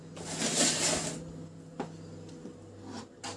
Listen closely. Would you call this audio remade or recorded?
recorded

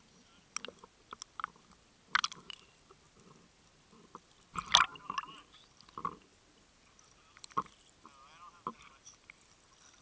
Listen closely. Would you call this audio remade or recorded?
recorded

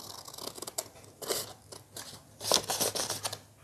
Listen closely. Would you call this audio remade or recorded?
recorded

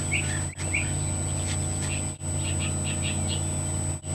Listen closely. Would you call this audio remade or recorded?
recorded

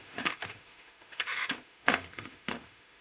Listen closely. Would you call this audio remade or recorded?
remade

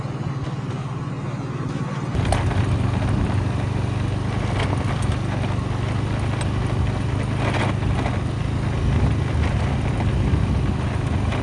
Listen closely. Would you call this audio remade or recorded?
recorded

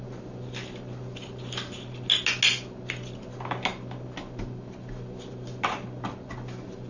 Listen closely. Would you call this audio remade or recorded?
recorded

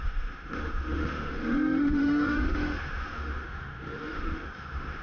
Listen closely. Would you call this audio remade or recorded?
remade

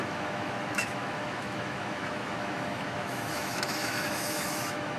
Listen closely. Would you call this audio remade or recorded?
remade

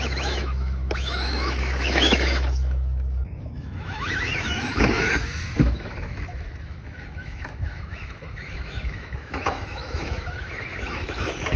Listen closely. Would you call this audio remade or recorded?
remade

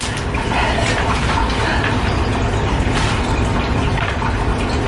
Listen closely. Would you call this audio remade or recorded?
recorded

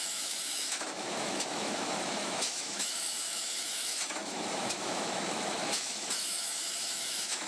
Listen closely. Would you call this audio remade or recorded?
remade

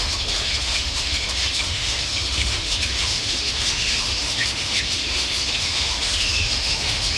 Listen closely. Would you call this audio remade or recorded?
remade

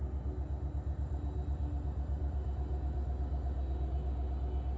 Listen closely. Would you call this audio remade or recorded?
recorded